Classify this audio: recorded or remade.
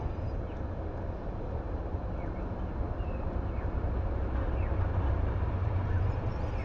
recorded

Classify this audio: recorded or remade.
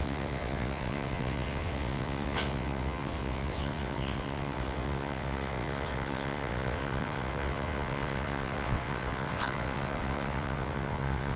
remade